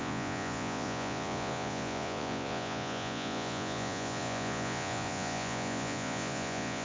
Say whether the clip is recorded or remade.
remade